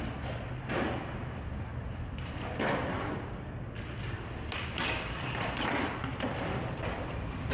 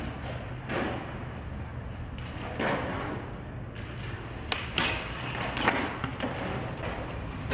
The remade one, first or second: first